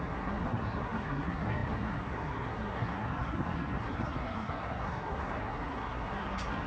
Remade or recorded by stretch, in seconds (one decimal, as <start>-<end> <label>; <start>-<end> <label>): 0.0-6.7 remade